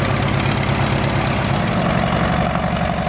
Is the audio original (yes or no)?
yes